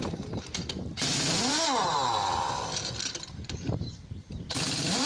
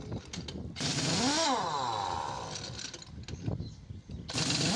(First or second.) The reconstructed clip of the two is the first